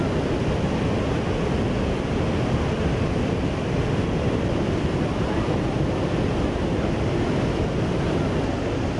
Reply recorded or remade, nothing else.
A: recorded